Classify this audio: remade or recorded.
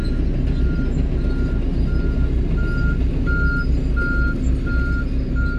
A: recorded